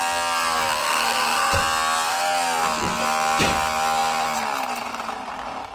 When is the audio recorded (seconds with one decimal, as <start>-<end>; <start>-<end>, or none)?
0.0-0.8; 1.6-5.7